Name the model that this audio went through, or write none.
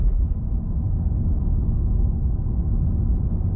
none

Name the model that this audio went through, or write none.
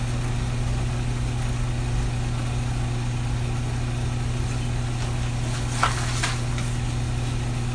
none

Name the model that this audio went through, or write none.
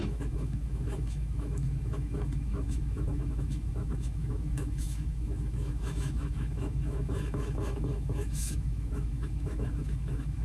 autoencoder, DAC-VAE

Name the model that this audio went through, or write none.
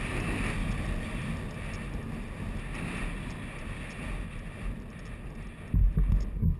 none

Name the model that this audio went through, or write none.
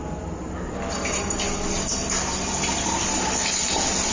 none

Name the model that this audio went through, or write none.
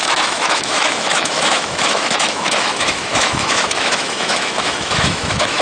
autoencoder, DAC-VAE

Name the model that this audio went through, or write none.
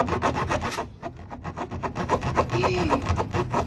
none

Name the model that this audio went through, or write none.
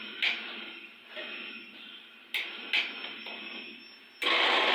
none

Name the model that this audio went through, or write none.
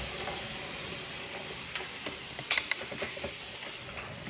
none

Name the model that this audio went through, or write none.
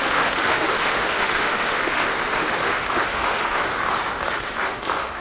autoencoder, DAC-VAE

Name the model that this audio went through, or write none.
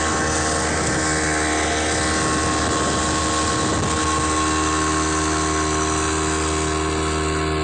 none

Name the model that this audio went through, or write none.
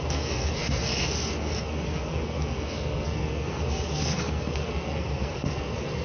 codec, SNAC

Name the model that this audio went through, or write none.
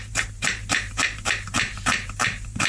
vocoder, BigVGAN v2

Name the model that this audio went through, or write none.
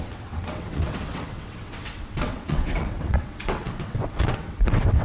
vocoder, WaveNeXt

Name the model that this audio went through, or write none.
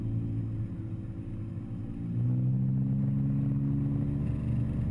none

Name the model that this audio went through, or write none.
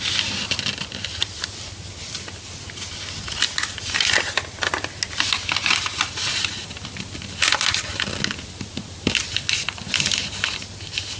none